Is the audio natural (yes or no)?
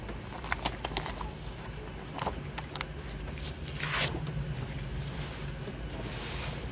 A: yes